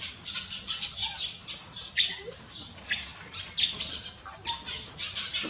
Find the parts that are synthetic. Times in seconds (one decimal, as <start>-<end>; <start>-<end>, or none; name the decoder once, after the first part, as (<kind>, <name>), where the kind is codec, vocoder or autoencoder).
1.0-1.9 (vocoder, BigVGAN v2)